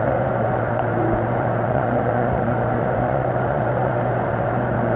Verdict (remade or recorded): remade